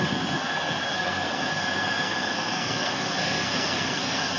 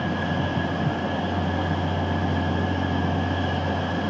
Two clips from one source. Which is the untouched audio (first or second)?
second